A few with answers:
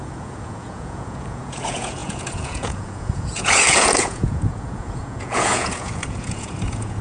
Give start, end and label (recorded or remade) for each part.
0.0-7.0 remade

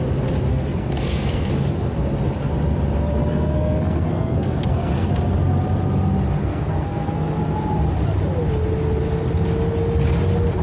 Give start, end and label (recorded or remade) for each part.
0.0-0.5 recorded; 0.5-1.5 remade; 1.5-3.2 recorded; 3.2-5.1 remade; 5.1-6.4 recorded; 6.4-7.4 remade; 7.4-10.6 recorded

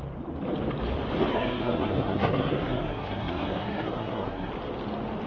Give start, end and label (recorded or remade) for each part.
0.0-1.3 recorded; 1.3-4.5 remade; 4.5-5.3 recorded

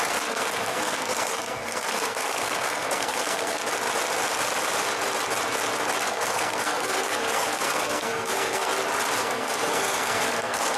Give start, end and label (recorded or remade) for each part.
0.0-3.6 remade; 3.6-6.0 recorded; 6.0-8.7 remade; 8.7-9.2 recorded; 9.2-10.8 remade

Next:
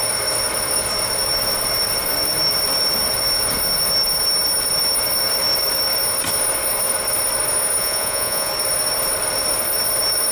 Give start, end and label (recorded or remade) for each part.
0.0-7.8 recorded; 7.8-8.5 remade; 8.5-10.3 recorded

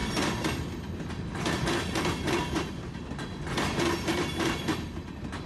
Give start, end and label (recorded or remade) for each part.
0.0-5.5 recorded